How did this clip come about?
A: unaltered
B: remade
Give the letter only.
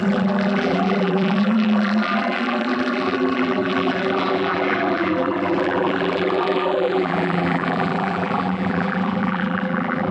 B